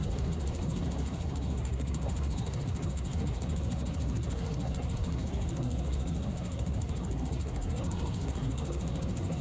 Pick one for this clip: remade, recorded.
remade